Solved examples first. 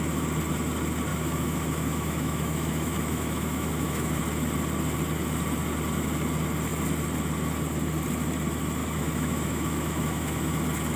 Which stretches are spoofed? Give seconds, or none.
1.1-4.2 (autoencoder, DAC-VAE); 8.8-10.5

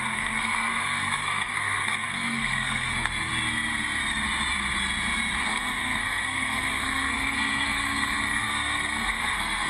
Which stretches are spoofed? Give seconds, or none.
0.0-3.3 (codec, SNAC); 5.4-9.7

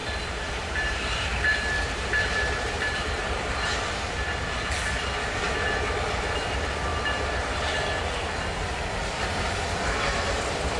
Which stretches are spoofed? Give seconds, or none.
0.0-3.8 (vocoder, BigVGAN v2); 6.9-7.8

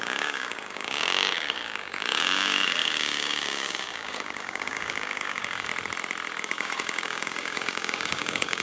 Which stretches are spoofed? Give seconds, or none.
0.0-5.7 (codec, DAC); 6.4-8.6

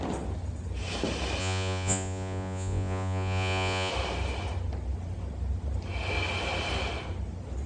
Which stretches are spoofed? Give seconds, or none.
1.4-3.9 (vocoder, Vocos)

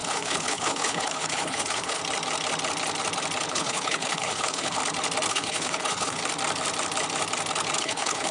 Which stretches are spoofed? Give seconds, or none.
0.0-2.0 (codec, HILCodec); 3.5-4.8; 5.3-6.2; 7.8-8.3

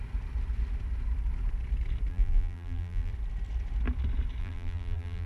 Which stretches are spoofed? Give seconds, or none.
2.1-3.1 (vocoder, BigVGAN v2); 4.4-5.3

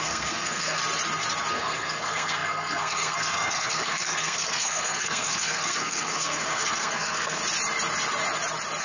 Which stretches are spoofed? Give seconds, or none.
0.0-0.8 (codec, SNAC); 1.5-7.4